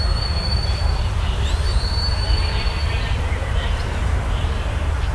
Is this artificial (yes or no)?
yes